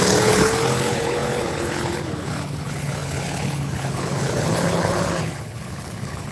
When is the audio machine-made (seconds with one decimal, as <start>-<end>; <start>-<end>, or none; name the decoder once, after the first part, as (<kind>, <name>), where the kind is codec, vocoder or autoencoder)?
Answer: 0.0-6.3 (codec, HILCodec)